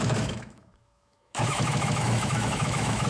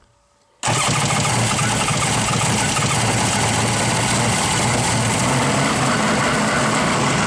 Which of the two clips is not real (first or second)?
first